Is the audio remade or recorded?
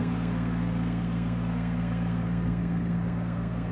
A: remade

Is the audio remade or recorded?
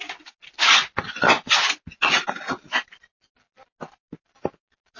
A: recorded